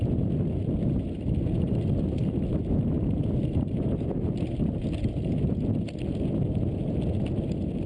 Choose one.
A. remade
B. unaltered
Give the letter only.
B